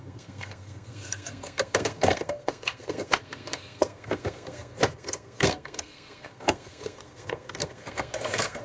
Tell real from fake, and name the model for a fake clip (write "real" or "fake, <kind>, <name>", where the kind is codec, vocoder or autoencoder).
fake, codec, SNAC